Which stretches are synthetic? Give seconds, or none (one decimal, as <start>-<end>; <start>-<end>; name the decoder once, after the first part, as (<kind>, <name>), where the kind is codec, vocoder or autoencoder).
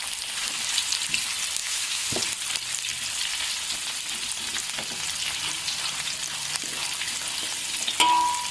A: 1.6-2.1 (autoencoder, DAC-VAE)